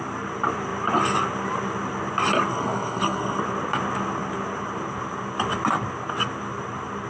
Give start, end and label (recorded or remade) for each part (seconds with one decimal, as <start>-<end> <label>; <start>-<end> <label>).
0.0-2.5 recorded; 2.5-3.4 remade; 3.4-7.1 recorded

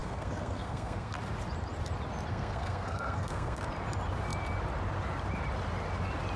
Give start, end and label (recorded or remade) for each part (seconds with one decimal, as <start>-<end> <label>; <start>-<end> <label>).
0.0-1.1 remade; 1.1-2.3 recorded; 2.3-3.7 remade; 3.7-6.4 recorded

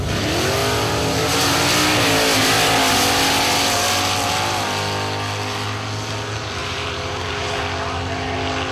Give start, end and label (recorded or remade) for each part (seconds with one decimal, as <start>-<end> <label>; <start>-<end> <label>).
0.0-6.6 recorded; 6.6-7.6 remade; 7.6-8.7 recorded

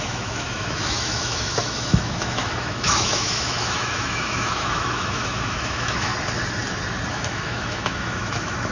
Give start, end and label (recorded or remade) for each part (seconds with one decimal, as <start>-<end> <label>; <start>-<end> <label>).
0.0-6.1 remade; 6.1-7.1 recorded; 7.1-8.7 remade

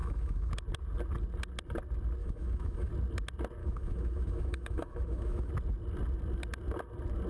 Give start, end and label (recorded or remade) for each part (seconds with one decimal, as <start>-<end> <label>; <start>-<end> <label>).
0.0-0.5 remade; 0.5-2.2 recorded; 2.2-2.9 remade; 2.9-3.6 recorded; 3.6-5.5 remade; 5.5-7.3 recorded

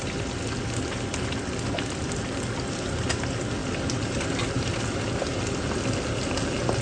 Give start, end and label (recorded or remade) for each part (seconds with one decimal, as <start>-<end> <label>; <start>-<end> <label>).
0.0-3.6 recorded; 3.6-4.8 remade; 4.8-6.8 recorded

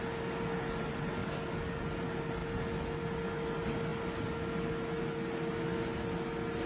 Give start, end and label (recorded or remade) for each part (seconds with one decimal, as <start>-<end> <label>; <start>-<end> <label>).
0.0-1.2 recorded; 1.2-1.8 remade; 1.8-6.7 recorded